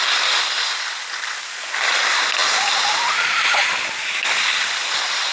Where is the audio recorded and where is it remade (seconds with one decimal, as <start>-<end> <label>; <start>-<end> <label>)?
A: 0.0-5.3 recorded